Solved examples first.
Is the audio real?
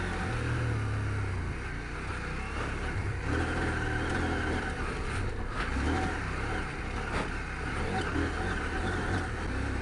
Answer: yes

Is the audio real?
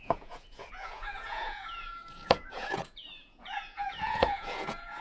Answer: no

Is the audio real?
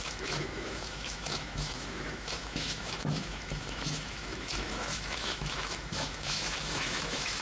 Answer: no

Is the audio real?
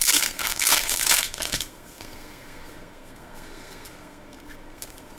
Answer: no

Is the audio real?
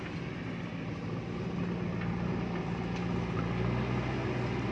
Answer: yes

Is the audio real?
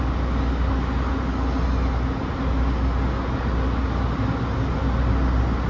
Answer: yes